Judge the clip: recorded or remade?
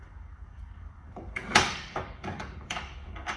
remade